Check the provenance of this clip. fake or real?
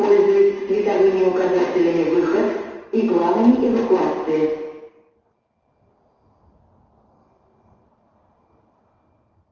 real